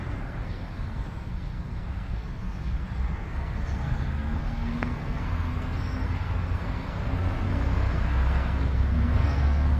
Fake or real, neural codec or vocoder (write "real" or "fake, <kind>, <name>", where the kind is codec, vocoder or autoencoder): fake, codec, SNAC